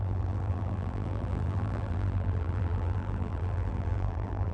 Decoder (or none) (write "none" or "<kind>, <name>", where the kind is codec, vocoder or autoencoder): vocoder, BigVGAN v2